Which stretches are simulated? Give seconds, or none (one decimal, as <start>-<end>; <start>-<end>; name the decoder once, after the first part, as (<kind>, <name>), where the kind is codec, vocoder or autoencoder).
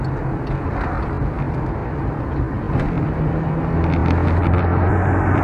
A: none